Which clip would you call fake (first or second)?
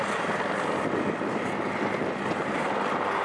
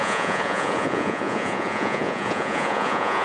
second